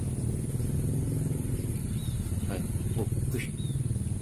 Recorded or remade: recorded